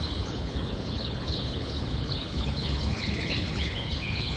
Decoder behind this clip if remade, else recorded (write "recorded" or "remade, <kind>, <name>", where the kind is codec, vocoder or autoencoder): remade, codec, HILCodec